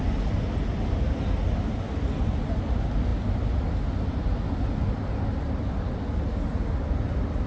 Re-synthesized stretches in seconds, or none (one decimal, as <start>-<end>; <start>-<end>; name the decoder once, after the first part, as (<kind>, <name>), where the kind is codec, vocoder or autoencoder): none